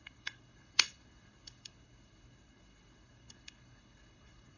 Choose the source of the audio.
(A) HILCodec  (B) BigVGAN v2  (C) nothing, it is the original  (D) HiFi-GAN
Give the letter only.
A